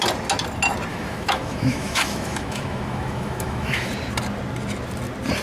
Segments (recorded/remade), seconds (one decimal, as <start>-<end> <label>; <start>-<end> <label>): 0.0-0.9 recorded; 0.9-3.9 remade; 3.9-5.4 recorded